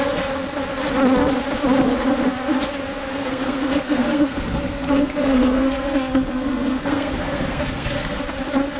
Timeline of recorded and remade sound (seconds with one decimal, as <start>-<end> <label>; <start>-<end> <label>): 0.0-3.1 recorded; 3.1-8.2 remade; 8.2-8.8 recorded

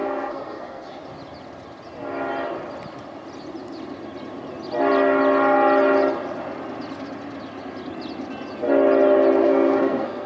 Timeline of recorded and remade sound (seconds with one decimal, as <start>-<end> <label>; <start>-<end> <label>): 0.0-1.0 remade; 1.0-9.4 recorded; 9.4-10.3 remade